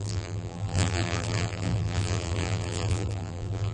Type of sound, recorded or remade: remade